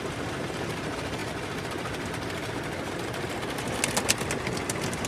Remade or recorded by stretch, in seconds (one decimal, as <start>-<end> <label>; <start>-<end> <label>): 0.0-5.1 recorded